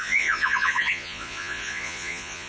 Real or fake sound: fake